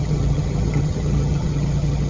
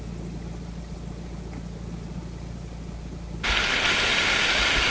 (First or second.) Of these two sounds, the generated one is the first